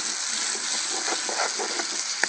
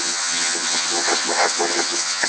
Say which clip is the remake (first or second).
second